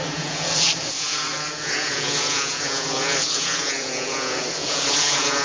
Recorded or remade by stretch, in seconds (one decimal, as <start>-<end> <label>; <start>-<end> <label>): 0.0-5.4 remade